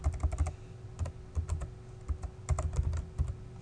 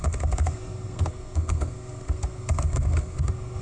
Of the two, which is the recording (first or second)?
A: first